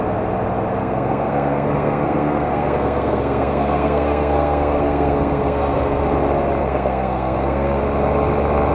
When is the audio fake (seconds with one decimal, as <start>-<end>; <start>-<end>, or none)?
0.8-6.0; 6.6-7.8